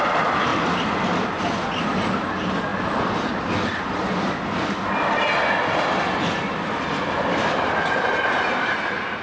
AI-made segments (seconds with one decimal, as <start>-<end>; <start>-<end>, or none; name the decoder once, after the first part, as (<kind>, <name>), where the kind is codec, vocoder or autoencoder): none